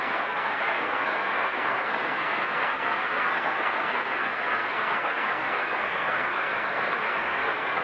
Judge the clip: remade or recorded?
remade